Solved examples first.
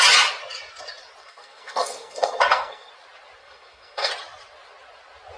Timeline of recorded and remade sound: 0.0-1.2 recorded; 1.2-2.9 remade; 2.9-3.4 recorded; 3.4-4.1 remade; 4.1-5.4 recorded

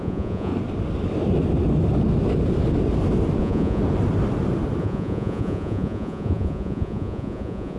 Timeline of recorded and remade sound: 0.0-0.5 remade; 0.5-3.4 recorded; 3.4-3.8 remade; 3.8-4.8 recorded; 4.8-7.8 remade

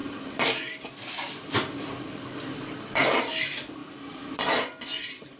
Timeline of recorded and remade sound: 0.0-3.2 remade; 3.2-3.8 recorded; 3.8-4.5 remade; 4.5-5.4 recorded

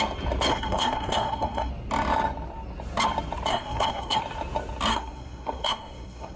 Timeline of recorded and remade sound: 0.0-0.5 recorded; 0.5-1.7 remade; 1.7-3.5 recorded; 3.5-4.2 remade; 4.2-4.9 recorded; 4.9-6.4 remade

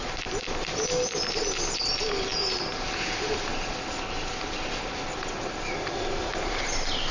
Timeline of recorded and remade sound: 0.0-7.1 recorded